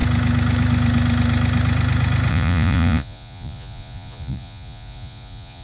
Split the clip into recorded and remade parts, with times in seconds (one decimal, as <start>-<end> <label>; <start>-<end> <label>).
0.0-2.3 recorded; 2.3-5.6 remade